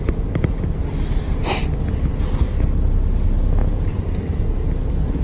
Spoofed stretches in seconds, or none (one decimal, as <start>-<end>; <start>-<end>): 1.4-2.1; 3.9-4.4